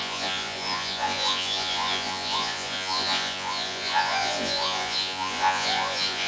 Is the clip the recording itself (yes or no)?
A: no